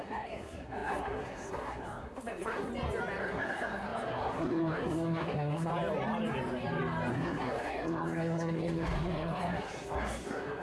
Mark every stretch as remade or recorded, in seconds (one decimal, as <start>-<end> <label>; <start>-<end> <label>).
0.0-2.7 remade; 2.7-3.2 recorded; 3.2-5.7 remade; 5.7-7.1 recorded; 7.1-10.6 remade